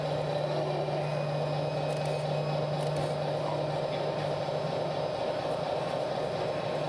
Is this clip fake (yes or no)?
no